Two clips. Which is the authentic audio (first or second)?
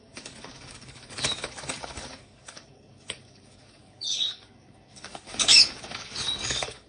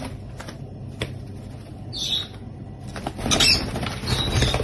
second